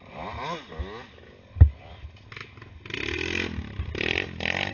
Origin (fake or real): real